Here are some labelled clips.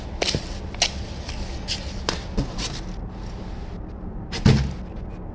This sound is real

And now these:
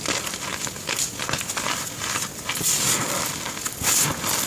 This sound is real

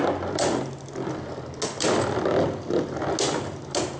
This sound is real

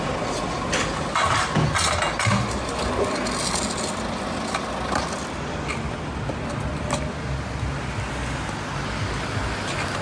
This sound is real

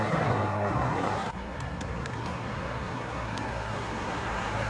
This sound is fake